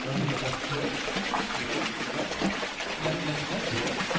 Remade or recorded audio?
recorded